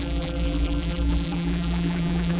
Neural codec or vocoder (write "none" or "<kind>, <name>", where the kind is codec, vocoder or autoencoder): vocoder, BigVGAN v2